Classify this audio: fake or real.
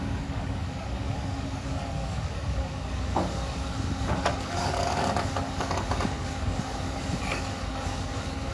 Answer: fake